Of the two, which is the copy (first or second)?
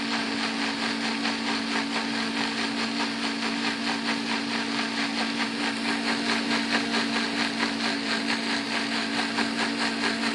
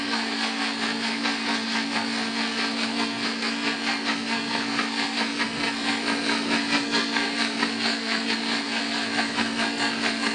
second